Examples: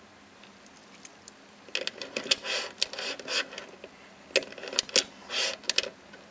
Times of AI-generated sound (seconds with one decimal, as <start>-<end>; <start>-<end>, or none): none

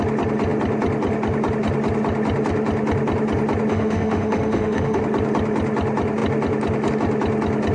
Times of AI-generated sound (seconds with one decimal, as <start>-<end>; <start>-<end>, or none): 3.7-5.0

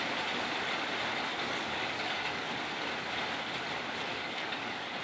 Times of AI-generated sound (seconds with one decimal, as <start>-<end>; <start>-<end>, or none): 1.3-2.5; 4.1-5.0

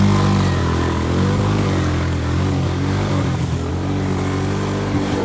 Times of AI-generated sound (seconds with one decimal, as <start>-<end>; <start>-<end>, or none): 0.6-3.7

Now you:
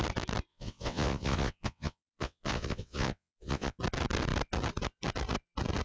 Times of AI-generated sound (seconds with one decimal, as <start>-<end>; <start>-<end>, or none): 0.5-3.8

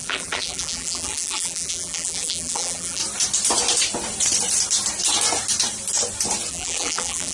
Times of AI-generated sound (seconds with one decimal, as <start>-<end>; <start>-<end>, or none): 0.0-3.0; 6.5-7.3

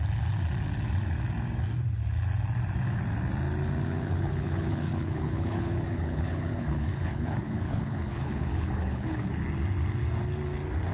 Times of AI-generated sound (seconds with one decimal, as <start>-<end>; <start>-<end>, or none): 4.1-9.3